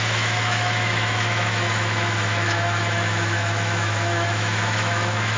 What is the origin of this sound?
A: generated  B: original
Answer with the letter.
A